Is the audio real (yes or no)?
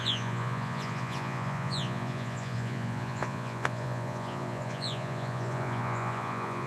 no